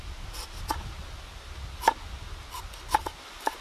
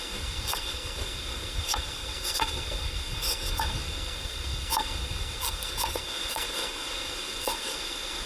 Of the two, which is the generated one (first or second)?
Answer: second